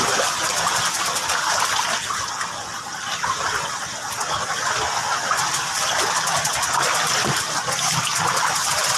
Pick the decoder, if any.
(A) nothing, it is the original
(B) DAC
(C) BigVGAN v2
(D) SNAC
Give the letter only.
A